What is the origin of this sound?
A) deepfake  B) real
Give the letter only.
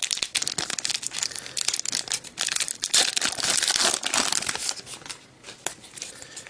B